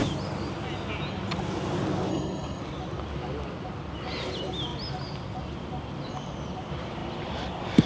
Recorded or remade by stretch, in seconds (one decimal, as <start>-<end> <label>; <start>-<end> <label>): 0.0-2.1 recorded; 2.1-2.6 remade; 2.6-7.9 recorded